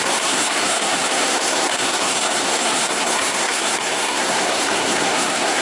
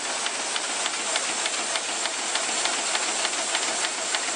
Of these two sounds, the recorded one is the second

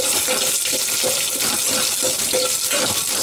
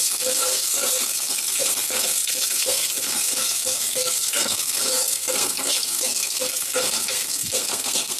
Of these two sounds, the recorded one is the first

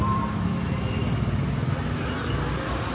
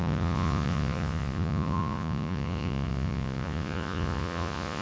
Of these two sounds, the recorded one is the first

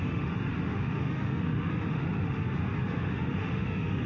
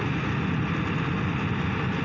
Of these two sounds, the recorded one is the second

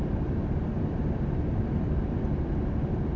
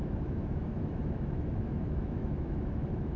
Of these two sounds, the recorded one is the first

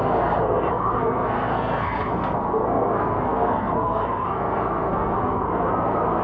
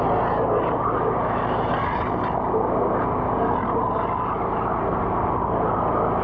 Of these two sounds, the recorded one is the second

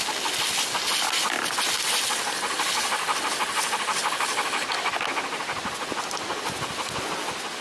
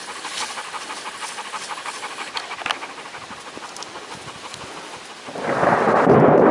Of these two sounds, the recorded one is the first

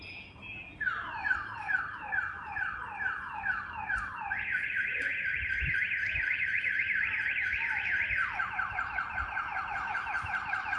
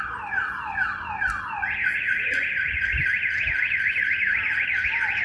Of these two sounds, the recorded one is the second